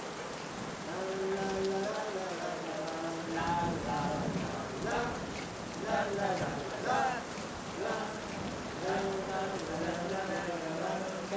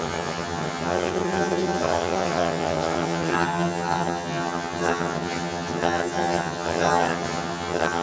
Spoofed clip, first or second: second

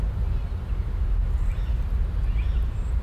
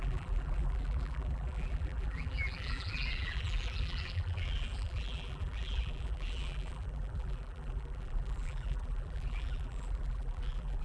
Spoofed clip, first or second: second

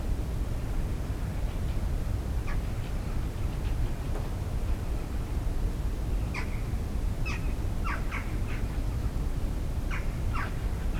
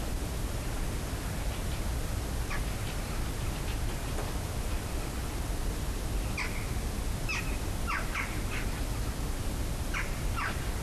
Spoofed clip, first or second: first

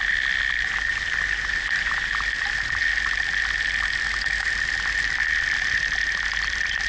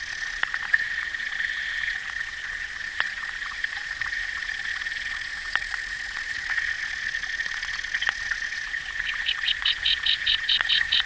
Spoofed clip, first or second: second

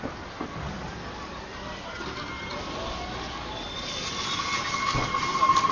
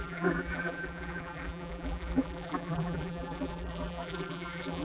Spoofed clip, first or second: second